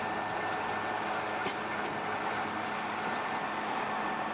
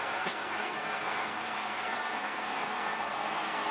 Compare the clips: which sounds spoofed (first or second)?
second